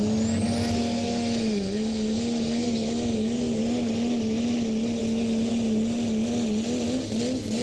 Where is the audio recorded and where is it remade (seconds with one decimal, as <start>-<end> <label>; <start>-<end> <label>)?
0.0-0.8 recorded; 0.8-3.6 remade; 3.6-7.6 recorded